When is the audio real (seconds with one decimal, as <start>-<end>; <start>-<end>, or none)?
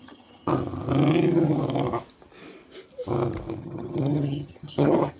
0.5-3.6